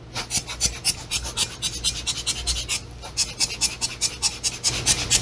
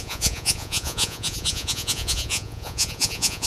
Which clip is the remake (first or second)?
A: second